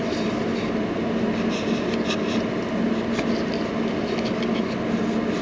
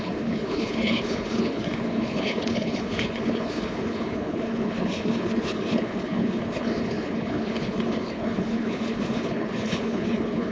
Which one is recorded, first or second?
first